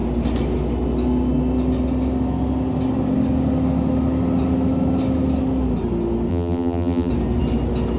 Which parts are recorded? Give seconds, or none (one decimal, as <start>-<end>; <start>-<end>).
0.0-6.3; 7.1-8.0

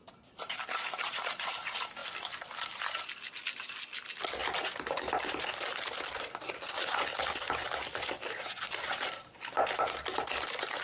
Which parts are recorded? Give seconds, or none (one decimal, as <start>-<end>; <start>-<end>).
1.5-2.0; 3.4-4.4; 8.5-10.8

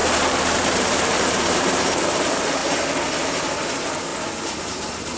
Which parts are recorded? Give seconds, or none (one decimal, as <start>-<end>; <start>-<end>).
2.6-3.2; 4.1-4.6

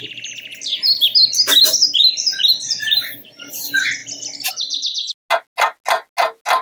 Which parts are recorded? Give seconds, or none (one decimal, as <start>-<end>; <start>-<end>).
0.0-1.8; 3.5-6.6

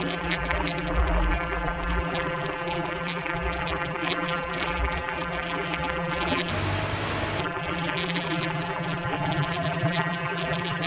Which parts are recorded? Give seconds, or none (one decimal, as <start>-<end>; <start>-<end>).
6.5-7.4

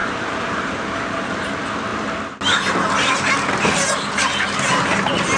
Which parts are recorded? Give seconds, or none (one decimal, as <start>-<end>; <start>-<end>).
1.4-5.4

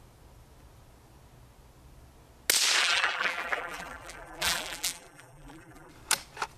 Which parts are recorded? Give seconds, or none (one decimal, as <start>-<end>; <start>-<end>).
0.0-2.8; 5.9-6.6